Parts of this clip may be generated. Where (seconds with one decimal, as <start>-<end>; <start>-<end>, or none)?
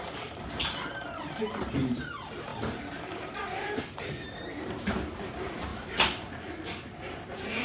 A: 0.0-5.7; 7.1-7.6